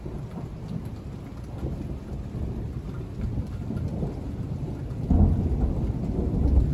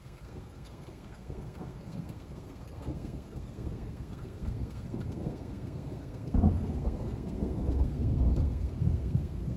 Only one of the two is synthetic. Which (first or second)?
second